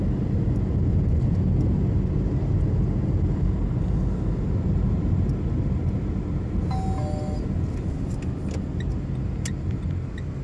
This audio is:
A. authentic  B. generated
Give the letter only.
A